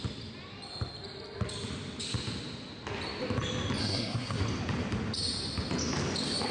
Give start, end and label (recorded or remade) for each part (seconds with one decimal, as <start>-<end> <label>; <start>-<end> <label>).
0.0-3.8 recorded; 3.8-4.4 remade; 4.4-6.5 recorded